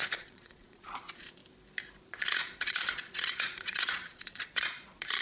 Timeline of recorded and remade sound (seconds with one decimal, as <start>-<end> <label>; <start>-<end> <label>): 0.0-1.4 remade; 1.4-2.0 recorded; 2.0-5.2 remade